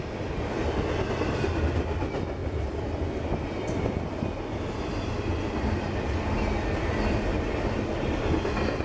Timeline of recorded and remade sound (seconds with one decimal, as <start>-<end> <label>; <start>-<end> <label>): 0.0-8.8 recorded